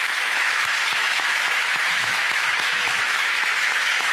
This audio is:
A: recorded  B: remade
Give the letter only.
B